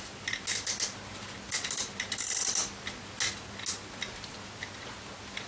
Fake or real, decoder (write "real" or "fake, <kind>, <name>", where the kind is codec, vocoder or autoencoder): real